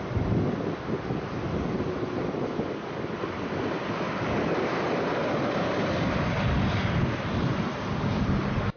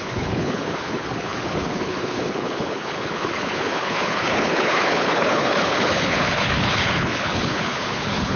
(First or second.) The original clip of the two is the first